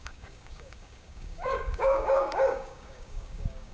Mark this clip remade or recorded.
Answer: remade